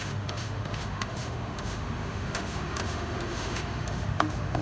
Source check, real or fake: fake